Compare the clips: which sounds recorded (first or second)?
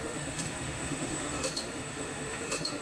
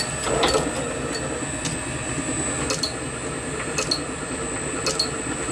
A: second